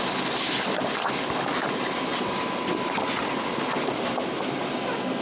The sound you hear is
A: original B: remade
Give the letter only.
A